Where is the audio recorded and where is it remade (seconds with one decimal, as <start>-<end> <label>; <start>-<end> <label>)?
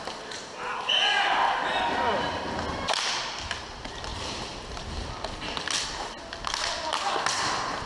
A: 0.0-4.1 recorded; 4.1-4.8 remade; 4.8-7.9 recorded